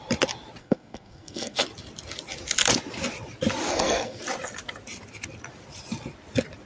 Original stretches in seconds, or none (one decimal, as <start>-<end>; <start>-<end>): 0.0-0.6; 1.6-3.7; 4.2-6.7